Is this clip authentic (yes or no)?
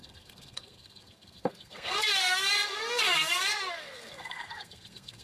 no